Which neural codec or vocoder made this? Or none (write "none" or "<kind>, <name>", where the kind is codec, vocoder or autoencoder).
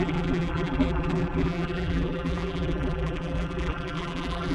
vocoder, BigVGAN v2